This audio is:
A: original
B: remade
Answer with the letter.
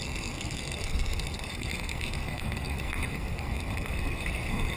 B